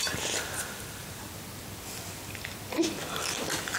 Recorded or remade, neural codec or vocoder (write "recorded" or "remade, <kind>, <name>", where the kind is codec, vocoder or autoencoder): recorded